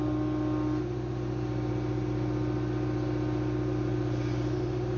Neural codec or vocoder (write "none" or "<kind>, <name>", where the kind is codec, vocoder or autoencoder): none